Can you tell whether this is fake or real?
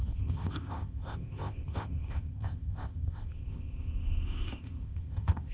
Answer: fake